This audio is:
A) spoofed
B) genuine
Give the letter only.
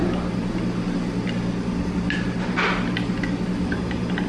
B